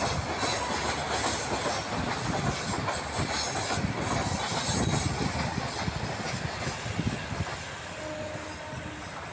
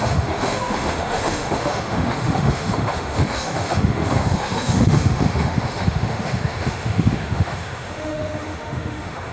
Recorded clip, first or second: first